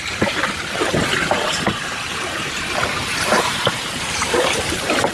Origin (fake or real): fake